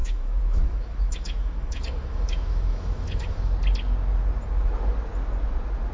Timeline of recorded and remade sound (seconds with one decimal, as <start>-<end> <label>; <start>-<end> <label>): 0.0-3.5 remade; 3.5-5.9 recorded